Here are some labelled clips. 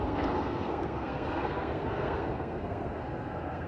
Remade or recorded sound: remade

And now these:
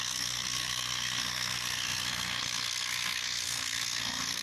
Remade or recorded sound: remade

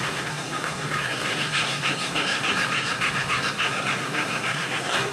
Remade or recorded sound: remade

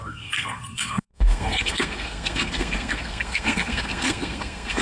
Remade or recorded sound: remade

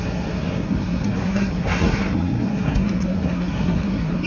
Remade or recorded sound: remade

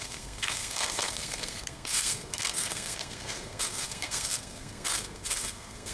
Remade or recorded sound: remade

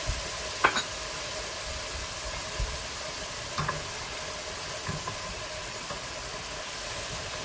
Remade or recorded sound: recorded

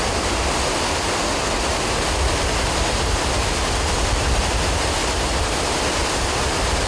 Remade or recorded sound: recorded